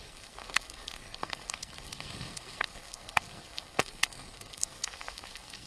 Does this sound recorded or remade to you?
remade